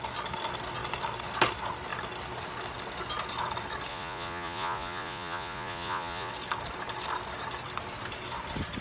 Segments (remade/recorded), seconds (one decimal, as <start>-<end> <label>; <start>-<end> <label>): 0.0-3.9 recorded; 3.9-6.3 remade; 6.3-8.8 recorded